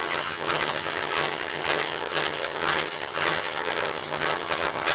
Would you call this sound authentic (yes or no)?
no